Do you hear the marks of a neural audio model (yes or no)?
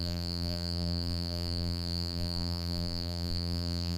yes